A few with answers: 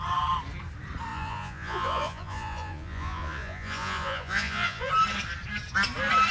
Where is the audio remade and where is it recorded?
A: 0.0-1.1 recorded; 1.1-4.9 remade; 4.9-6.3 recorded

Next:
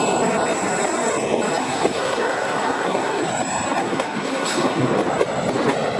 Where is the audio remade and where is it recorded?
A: 0.0-1.6 recorded; 1.6-3.3 remade; 3.3-3.8 recorded; 3.8-4.9 remade; 4.9-6.0 recorded

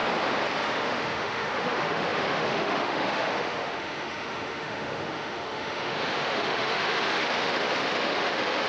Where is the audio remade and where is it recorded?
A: 0.0-0.6 recorded; 0.6-8.7 remade

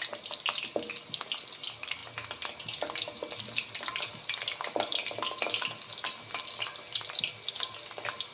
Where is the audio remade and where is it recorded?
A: 0.0-8.3 recorded

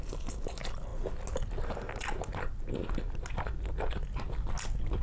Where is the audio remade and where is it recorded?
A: 0.0-5.0 recorded

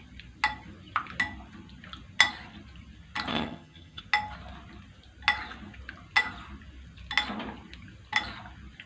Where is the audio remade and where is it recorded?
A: 0.0-3.3 recorded; 3.3-4.0 remade; 4.0-8.9 recorded

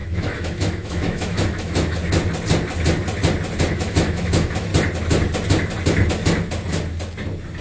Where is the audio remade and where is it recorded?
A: 0.0-2.0 remade; 2.0-3.7 recorded; 3.7-4.7 remade; 4.7-7.6 recorded